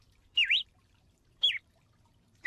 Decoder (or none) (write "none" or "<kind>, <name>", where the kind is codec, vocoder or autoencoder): vocoder, BigVGAN v2